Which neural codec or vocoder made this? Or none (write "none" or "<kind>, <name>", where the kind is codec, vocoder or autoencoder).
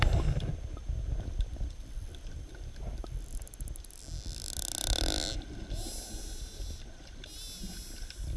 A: none